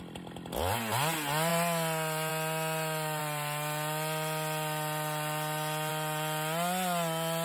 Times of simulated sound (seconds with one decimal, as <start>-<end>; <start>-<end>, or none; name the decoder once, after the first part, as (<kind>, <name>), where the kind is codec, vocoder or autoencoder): none